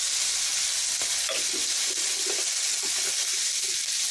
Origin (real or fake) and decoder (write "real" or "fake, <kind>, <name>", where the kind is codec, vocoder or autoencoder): real